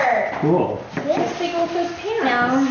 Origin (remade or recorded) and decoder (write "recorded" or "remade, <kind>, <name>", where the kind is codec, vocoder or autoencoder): recorded